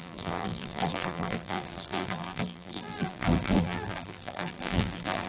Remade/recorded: remade